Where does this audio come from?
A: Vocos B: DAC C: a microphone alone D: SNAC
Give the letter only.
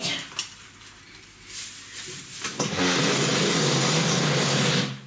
C